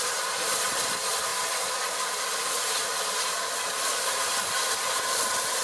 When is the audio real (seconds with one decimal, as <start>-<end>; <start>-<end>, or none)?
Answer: 0.0-5.6